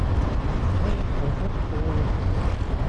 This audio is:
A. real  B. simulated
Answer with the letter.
A